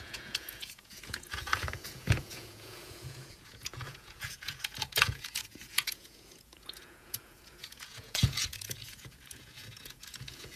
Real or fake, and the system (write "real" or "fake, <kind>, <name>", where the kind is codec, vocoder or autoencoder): fake, vocoder, Vocos